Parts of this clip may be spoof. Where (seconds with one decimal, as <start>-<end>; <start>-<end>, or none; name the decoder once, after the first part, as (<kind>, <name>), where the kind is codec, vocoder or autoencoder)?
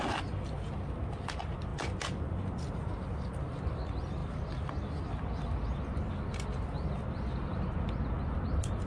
none